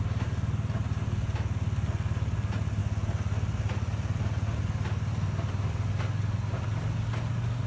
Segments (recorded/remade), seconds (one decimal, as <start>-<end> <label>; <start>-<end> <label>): 0.0-7.7 recorded